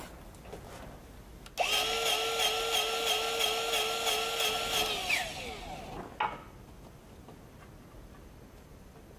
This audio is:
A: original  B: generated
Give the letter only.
A